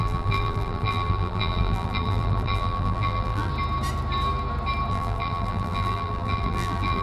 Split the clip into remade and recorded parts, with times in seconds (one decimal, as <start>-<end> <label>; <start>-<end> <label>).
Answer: 0.0-3.5 remade; 3.5-4.9 recorded; 4.9-7.0 remade